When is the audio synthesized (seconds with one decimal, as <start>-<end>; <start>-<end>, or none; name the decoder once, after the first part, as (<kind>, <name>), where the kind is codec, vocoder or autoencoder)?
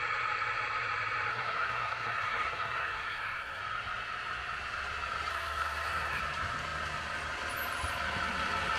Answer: 1.3-3.6 (codec, SNAC); 5.3-6.2